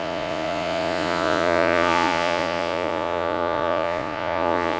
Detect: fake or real fake